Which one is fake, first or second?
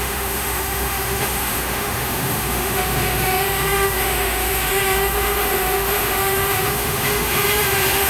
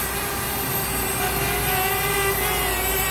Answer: first